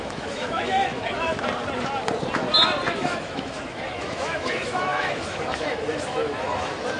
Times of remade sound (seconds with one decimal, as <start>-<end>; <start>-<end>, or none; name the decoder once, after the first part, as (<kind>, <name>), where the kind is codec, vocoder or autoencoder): 0.0-1.3 (autoencoder, DAC-VAE); 2.9-7.0